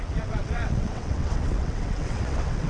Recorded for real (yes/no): no